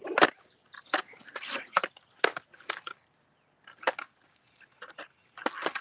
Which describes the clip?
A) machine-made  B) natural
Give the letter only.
B